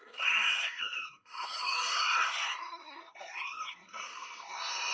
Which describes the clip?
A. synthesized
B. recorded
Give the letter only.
A